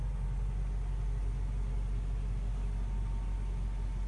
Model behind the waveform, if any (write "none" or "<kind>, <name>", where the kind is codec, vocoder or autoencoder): none